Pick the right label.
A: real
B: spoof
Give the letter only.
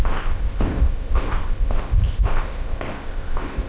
B